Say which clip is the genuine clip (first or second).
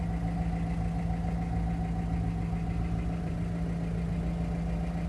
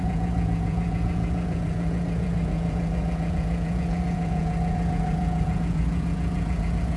first